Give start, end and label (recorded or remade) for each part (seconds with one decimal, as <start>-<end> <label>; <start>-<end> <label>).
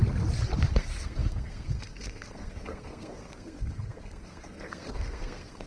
0.0-0.7 recorded; 0.7-5.7 remade